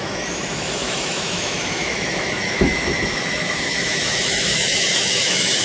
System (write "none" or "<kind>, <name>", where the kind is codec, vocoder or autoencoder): autoencoder, DAC-VAE